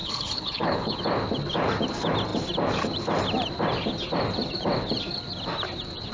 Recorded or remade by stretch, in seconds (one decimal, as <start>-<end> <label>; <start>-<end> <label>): 0.0-0.9 remade; 0.9-6.1 recorded